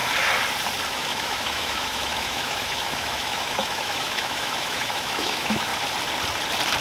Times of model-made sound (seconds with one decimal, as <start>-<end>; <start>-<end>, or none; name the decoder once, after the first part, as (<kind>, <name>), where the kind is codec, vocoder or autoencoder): 0.9-5.7 (autoencoder, DAC-VAE)